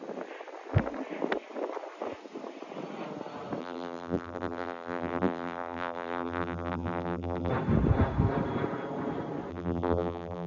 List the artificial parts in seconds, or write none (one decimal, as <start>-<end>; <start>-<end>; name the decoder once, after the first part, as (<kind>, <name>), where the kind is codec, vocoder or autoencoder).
3.6-7.5 (vocoder, BigVGAN v2); 9.5-10.5